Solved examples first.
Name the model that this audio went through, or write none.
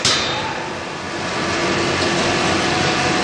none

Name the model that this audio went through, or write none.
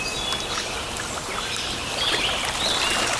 none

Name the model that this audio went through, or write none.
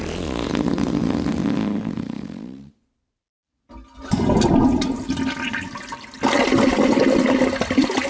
none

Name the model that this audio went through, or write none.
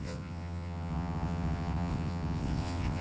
vocoder, WaveNeXt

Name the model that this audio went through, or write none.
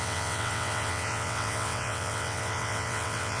vocoder, WaveNeXt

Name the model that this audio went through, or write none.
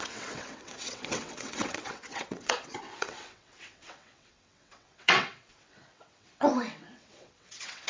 vocoder, WaveNeXt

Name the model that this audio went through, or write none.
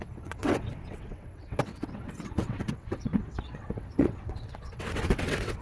vocoder, WaveNeXt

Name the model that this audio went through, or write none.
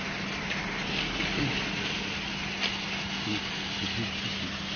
none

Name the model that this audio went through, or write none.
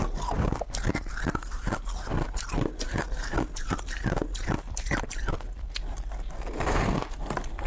none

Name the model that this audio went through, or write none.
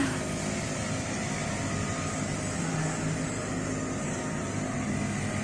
none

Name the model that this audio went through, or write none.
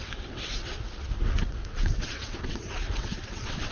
vocoder, WaveNeXt